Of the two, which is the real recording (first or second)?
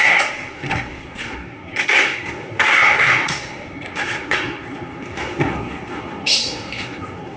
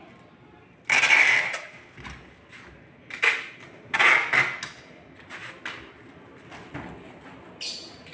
second